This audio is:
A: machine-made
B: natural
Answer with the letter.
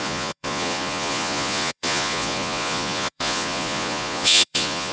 A